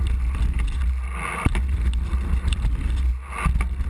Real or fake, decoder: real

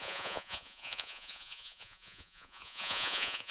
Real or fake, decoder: fake, vocoder, Vocos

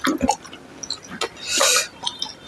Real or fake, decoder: real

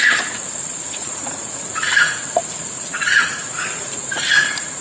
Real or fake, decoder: fake, vocoder, Vocos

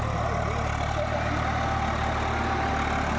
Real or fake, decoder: real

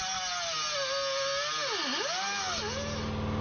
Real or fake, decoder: real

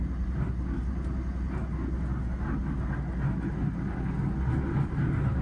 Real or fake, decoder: real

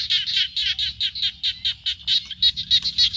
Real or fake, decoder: real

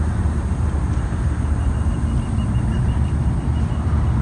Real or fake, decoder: real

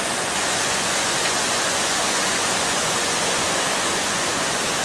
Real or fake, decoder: fake, vocoder, Vocos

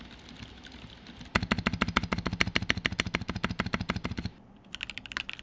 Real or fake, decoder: real